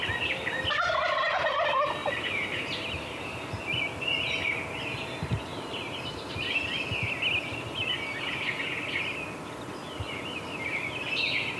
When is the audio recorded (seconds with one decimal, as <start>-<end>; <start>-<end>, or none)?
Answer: 0.0-2.0; 4.3-5.5; 6.6-7.8; 8.6-11.6